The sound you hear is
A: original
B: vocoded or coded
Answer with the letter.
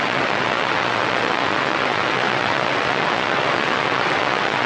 B